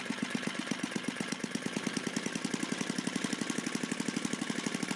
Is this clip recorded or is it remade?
recorded